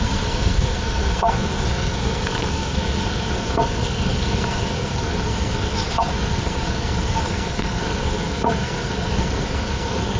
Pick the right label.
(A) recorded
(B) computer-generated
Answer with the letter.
B